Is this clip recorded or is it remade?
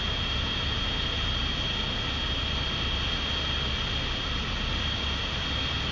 recorded